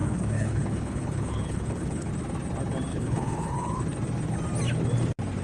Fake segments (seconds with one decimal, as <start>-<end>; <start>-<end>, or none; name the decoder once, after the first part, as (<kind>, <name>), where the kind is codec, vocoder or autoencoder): 0.0-2.1 (codec, HILCodec); 2.9-3.8